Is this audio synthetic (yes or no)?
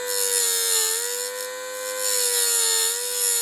no